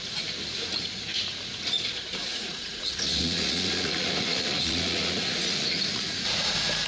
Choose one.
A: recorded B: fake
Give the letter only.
B